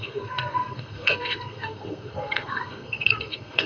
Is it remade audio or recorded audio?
remade